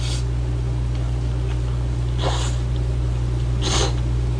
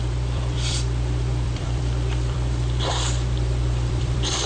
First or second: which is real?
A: first